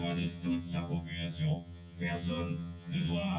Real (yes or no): no